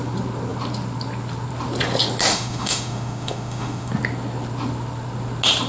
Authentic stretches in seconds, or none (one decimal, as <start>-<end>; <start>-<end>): 0.0-2.3; 3.9-5.7